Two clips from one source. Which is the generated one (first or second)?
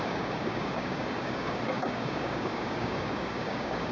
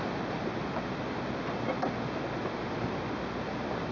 first